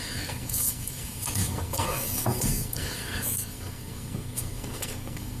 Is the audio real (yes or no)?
no